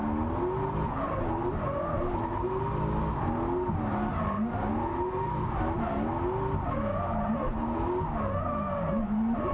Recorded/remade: recorded